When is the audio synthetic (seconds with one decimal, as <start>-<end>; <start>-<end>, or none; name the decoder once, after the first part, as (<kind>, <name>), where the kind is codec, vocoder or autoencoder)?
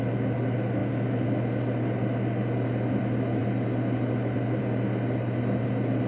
none